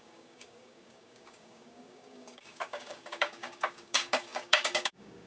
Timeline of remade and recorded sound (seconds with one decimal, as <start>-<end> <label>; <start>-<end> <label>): 0.0-5.3 remade